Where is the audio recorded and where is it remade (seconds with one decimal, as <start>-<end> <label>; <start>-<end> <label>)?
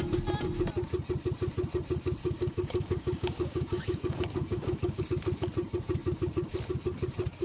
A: 0.0-2.2 recorded; 2.2-5.0 remade; 5.0-7.4 recorded